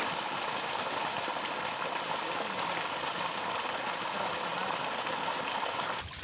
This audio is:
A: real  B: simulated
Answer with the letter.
A